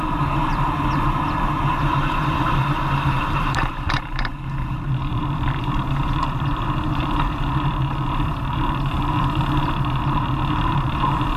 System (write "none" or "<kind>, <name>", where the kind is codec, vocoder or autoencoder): vocoder, BigVGAN v2